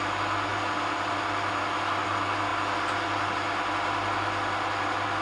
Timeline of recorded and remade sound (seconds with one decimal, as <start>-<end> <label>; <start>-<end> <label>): 0.0-5.2 recorded